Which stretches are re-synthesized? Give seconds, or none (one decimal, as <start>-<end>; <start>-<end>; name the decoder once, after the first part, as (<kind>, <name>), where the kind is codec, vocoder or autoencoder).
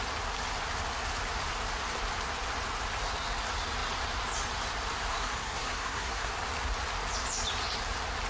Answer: 5.1-6.3 (codec, SNAC)